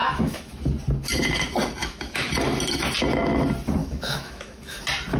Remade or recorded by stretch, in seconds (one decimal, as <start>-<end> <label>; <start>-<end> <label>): 0.0-0.5 remade; 0.5-1.8 recorded; 1.8-2.3 remade; 2.3-3.8 recorded; 3.8-4.8 remade; 4.8-5.2 recorded